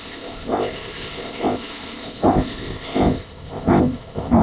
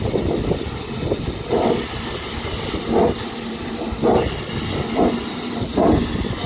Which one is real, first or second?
second